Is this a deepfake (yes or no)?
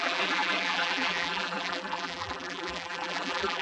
yes